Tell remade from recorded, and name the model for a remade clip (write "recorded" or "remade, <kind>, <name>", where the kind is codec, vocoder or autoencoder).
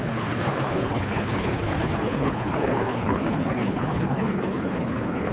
remade, codec, HILCodec